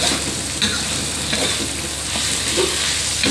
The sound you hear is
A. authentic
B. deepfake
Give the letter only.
A